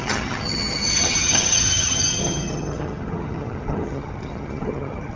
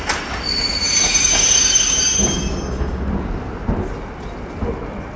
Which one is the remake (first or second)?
first